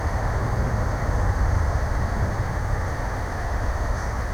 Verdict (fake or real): fake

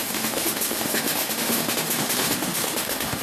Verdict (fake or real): fake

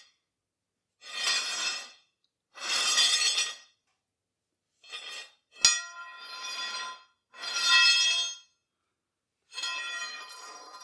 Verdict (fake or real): real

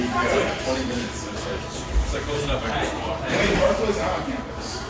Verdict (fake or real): real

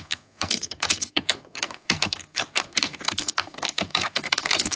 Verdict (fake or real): fake